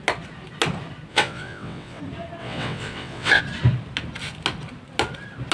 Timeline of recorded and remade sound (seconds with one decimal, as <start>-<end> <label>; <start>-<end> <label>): 0.0-1.1 recorded; 1.1-2.0 remade; 2.0-2.4 recorded; 2.4-3.4 remade; 3.4-5.5 recorded